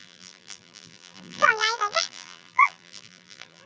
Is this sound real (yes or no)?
no